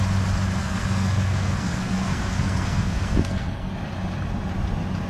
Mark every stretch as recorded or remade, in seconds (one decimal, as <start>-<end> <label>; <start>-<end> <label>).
0.0-0.6 recorded; 0.6-3.7 remade; 3.7-5.1 recorded